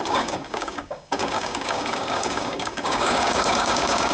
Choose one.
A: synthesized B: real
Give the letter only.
A